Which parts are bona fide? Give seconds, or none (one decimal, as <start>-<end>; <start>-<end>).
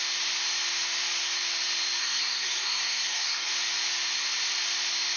0.0-2.0; 3.5-5.2